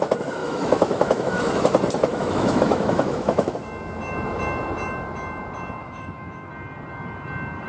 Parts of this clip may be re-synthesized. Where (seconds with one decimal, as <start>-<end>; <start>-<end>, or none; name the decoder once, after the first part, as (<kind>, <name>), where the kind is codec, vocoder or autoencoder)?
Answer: 0.4-1.5 (autoencoder, DAC-VAE); 2.1-3.6; 5.8-6.5